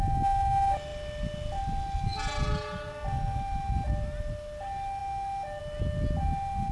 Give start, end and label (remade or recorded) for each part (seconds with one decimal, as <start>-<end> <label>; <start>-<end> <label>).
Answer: 0.0-6.7 recorded